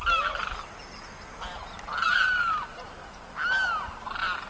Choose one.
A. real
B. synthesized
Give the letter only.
A